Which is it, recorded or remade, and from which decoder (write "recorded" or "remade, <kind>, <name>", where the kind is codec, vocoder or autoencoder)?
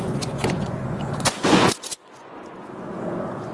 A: remade, vocoder, Vocos